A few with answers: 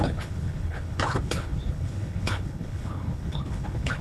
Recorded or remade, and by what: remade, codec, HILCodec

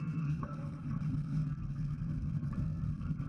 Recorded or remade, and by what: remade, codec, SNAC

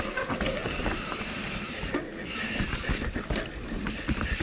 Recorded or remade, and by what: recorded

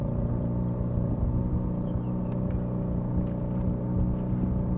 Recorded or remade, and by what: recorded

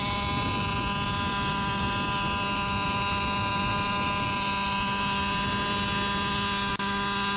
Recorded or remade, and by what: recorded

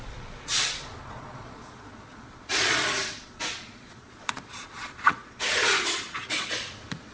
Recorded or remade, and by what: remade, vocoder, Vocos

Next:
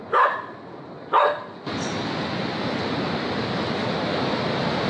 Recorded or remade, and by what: recorded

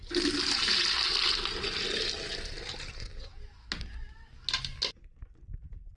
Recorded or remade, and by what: recorded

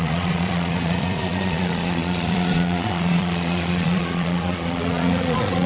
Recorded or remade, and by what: remade, vocoder, Vocos